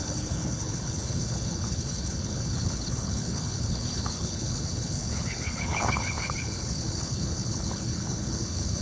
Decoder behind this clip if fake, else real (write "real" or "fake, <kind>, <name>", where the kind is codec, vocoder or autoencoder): fake, codec, HILCodec